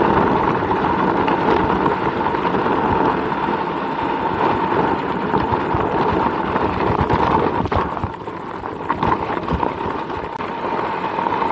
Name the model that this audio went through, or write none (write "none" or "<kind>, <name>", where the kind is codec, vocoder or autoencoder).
none